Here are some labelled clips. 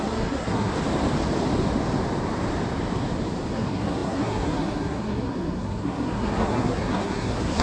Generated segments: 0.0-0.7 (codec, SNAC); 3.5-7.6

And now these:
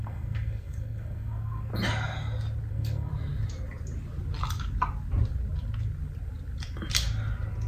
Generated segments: 0.0-1.7 (codec, SNAC); 2.7-3.1

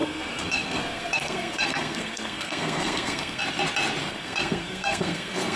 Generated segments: 0.0-3.4 (codec, SNAC); 4.0-5.6

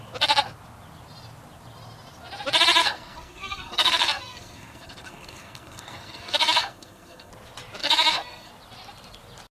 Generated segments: 2.8-7.3 (codec, SNAC); 7.8-8.5

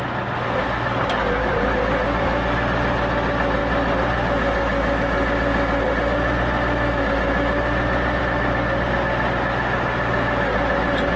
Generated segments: none

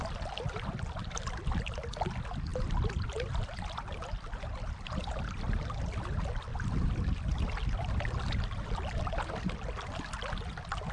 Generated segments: none

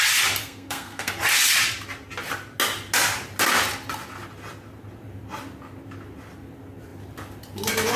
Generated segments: 0.4-1.1 (codec, SNAC)

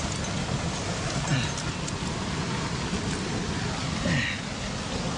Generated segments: none